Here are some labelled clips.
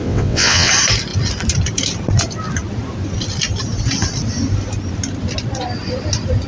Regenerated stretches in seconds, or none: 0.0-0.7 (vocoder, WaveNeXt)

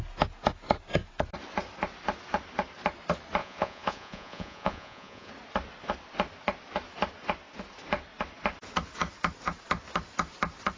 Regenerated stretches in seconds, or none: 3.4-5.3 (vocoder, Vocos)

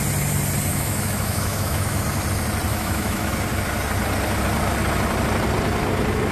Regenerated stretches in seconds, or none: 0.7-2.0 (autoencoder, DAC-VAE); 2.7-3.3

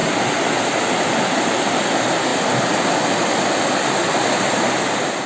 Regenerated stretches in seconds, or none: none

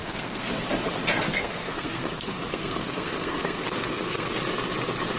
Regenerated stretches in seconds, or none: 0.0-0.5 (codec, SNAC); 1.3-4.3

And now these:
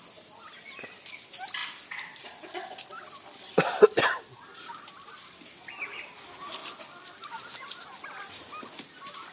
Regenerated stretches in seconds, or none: none

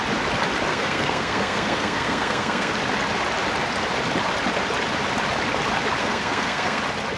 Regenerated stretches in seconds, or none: 0.7-2.7 (codec, SNAC); 6.0-6.8

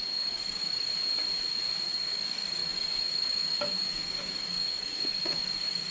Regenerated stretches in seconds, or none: 0.0-0.9 (codec, DAC); 1.8-5.9